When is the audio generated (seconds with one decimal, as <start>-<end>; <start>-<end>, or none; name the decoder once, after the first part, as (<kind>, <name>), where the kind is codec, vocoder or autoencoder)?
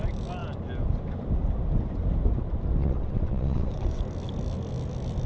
2.8-4.0 (vocoder, WaveNeXt)